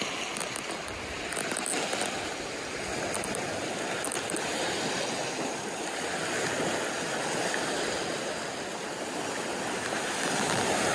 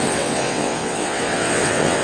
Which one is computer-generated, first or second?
second